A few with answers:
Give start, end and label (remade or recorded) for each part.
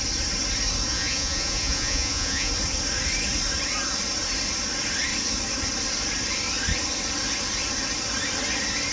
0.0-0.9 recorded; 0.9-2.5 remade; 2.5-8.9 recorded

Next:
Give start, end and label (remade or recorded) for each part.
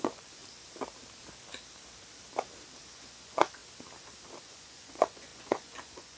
0.0-0.4 remade; 0.4-2.9 recorded; 2.9-3.6 remade; 3.6-4.4 recorded; 4.4-6.2 remade